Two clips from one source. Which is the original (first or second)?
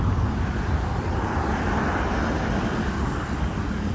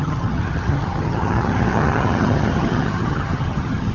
first